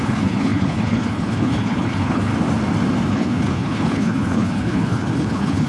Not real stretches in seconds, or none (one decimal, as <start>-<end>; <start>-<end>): 0.0-2.3; 3.1-5.7